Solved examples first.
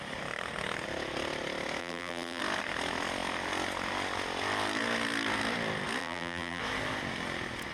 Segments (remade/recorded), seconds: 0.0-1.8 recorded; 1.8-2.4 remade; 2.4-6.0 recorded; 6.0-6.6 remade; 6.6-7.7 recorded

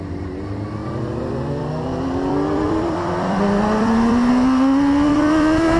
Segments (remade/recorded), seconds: 0.0-0.8 recorded; 0.8-4.3 remade; 4.3-5.1 recorded; 5.1-5.8 remade

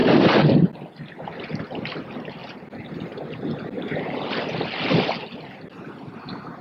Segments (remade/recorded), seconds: 0.0-6.6 recorded

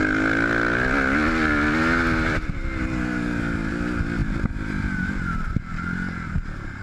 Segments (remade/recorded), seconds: 0.0-6.8 recorded